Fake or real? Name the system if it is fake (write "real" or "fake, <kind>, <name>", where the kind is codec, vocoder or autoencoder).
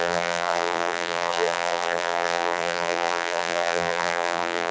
fake, vocoder, BigVGAN v2